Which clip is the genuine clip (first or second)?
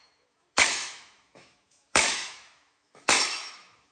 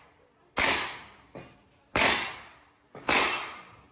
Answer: second